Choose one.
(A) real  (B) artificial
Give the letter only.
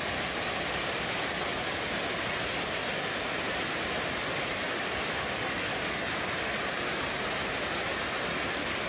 A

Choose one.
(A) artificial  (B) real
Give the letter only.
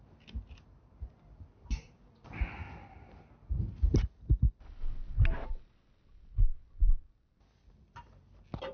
B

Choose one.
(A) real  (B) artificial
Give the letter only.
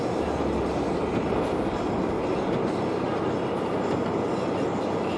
A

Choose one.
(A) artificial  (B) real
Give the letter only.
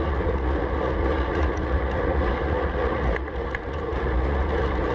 A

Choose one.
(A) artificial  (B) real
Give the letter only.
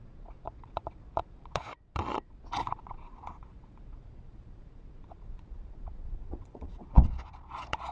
A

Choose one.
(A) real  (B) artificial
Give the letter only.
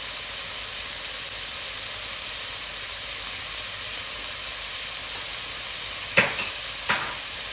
A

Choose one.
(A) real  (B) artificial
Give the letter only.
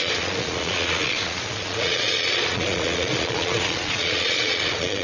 B